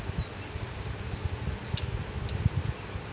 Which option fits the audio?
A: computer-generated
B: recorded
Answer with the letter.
B